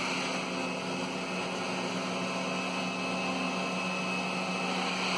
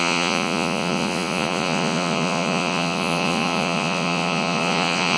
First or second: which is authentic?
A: first